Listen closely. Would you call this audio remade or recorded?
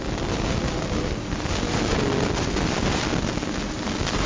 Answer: recorded